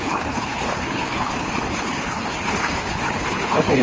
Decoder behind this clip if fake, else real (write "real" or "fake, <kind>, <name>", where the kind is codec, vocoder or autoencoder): fake, codec, HILCodec